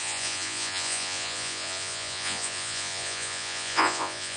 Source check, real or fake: fake